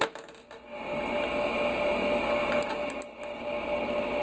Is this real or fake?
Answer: real